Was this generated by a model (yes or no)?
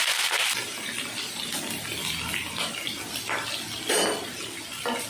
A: no